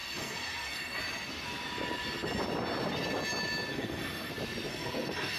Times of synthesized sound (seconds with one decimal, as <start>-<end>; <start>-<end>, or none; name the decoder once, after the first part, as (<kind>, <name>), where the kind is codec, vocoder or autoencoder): 0.0-1.0 (codec, SNAC); 3.7-4.3; 4.7-5.4